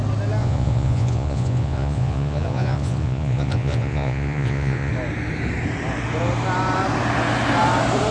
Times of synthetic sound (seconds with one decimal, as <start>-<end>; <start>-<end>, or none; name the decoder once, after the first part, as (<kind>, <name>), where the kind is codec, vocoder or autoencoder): 0.4-4.9 (vocoder, Vocos)